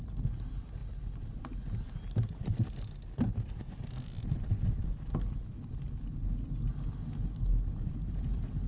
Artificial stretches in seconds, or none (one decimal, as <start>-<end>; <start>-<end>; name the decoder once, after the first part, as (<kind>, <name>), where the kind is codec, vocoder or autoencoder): none